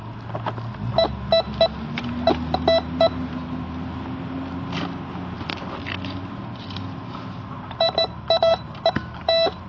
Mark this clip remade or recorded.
recorded